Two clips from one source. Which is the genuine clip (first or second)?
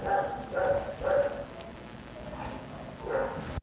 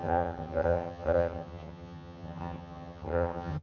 first